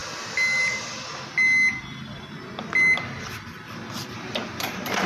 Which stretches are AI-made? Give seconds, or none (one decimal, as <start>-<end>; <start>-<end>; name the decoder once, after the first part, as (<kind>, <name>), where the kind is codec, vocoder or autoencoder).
0.6-1.0 (vocoder, BigVGAN v2); 4.1-5.1